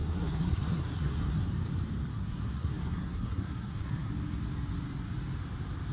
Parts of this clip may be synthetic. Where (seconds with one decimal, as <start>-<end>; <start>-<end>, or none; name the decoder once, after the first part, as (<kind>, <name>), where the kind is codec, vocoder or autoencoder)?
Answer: 0.0-1.5 (codec, SNAC); 2.1-4.1